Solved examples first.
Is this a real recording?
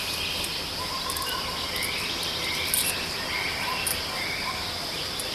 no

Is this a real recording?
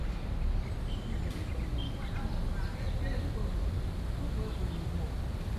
yes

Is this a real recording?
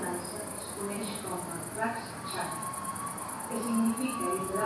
yes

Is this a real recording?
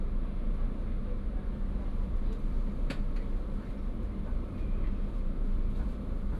yes